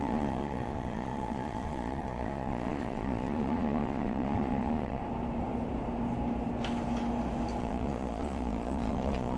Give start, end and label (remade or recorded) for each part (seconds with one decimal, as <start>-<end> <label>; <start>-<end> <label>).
0.0-5.0 remade; 5.0-7.6 recorded; 7.6-9.4 remade